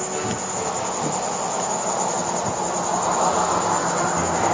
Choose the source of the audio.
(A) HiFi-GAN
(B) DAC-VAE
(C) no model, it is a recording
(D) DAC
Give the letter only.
C